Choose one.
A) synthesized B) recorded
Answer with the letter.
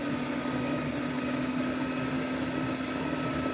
B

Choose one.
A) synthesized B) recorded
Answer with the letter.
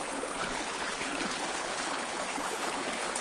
A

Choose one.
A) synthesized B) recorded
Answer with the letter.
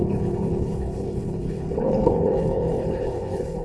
A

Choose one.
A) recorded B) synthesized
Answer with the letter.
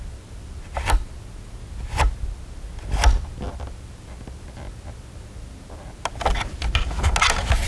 A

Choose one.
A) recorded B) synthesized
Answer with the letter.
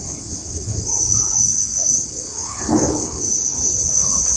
B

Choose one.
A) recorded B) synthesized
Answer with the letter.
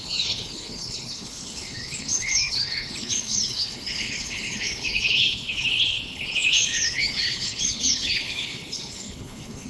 B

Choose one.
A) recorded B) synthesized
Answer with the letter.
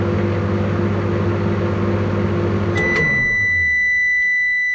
A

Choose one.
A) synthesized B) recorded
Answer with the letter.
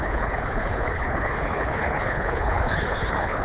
A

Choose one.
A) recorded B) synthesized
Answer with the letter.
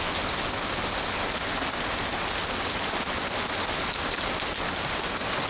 A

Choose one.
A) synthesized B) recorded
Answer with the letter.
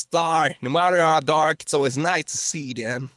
A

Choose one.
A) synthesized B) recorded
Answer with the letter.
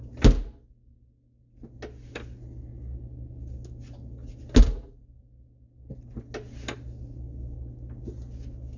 B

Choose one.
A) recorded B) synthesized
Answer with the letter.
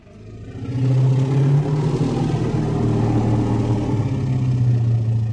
A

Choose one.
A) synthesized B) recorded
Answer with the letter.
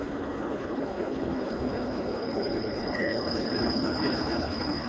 A